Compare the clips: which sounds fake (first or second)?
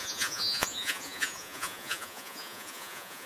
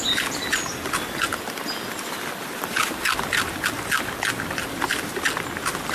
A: first